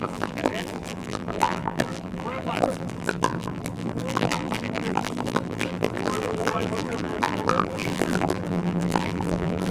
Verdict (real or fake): fake